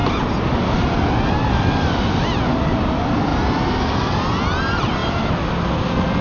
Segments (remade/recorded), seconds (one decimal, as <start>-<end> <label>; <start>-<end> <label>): 0.0-6.2 recorded